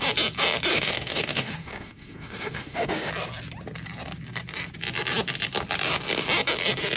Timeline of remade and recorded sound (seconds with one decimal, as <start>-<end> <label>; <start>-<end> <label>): 0.0-0.7 recorded; 0.7-3.1 remade; 3.1-7.0 recorded